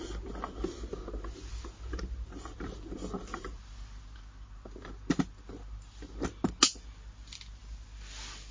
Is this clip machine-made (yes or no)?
no